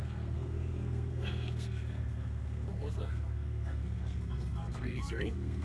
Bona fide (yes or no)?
no